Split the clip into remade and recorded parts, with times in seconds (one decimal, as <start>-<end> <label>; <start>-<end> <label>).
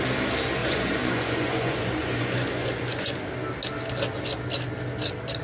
0.0-0.6 recorded; 0.6-3.2 remade; 3.2-5.4 recorded